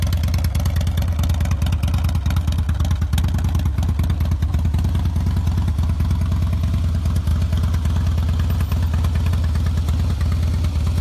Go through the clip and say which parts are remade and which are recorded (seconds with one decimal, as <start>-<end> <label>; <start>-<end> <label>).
0.0-11.0 recorded